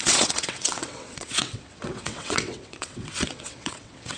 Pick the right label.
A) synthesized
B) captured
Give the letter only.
A